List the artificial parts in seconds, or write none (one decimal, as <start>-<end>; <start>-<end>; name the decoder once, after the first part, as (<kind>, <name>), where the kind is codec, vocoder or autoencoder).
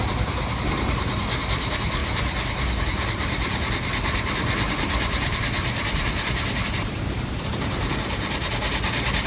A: none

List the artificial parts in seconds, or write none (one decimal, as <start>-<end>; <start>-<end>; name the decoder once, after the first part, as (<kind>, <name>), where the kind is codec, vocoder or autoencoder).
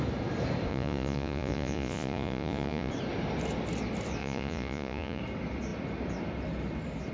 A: 0.7-2.9 (vocoder, Vocos); 4.2-5.2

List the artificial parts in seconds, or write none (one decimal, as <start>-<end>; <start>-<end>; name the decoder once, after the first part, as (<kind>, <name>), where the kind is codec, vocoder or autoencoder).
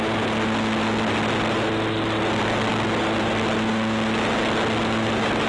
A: none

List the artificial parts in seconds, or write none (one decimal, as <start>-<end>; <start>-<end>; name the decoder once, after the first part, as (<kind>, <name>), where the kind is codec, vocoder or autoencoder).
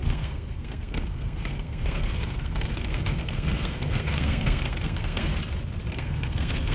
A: 0.0-5.3 (codec, SNAC); 5.9-6.7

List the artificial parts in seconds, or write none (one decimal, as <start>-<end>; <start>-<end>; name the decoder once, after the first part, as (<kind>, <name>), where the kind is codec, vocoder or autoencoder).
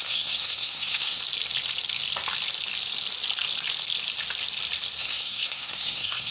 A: 0.0-1.2 (codec, SNAC); 5.0-6.3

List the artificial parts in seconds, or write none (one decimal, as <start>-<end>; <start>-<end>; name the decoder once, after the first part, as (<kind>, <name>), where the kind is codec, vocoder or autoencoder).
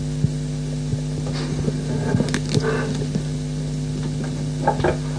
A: none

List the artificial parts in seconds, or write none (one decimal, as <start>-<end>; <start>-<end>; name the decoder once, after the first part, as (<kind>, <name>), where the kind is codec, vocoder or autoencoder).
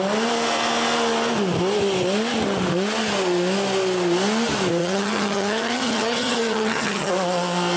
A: 4.8-7.1 (vocoder, HiFi-GAN)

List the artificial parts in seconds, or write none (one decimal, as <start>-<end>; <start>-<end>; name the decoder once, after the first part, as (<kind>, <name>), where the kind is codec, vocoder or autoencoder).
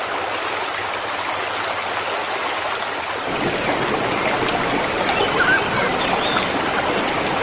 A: none